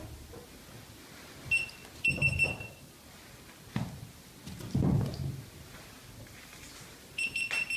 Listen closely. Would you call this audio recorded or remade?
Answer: recorded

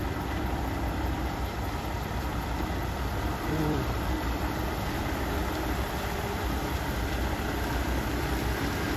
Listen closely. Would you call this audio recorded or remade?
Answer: remade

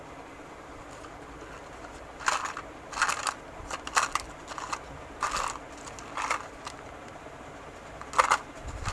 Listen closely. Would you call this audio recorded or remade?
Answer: recorded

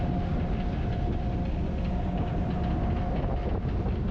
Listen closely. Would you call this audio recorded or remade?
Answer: recorded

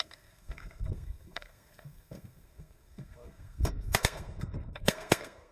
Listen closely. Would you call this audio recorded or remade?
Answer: remade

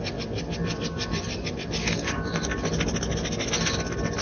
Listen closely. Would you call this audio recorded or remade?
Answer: recorded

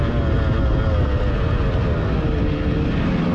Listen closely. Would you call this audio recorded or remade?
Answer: recorded